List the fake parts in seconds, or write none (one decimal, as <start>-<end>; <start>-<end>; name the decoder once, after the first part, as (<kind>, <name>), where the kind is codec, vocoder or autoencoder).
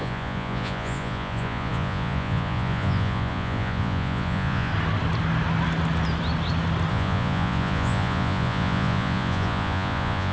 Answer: 0.0-4.7 (vocoder, Vocos); 6.9-10.3